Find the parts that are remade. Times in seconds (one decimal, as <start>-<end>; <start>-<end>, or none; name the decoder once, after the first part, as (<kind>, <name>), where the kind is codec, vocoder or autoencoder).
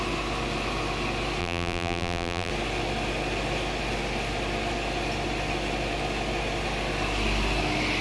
1.4-2.5 (vocoder, BigVGAN v2)